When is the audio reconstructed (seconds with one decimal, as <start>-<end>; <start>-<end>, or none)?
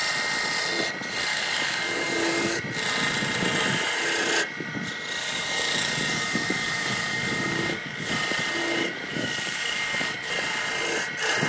1.3-2.6; 5.2-8.1; 8.6-10.3